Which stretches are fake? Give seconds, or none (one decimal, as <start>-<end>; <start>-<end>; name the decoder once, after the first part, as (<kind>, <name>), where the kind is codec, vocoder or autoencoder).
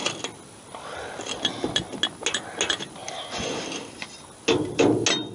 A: none